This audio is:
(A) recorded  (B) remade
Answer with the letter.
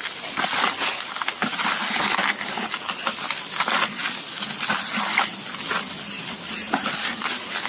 A